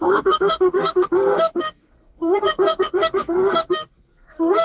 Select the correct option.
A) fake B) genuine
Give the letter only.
A